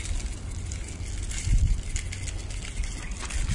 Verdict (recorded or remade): recorded